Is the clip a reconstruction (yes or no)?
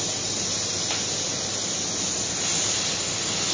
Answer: no